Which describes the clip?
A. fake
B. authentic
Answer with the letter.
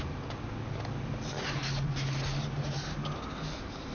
B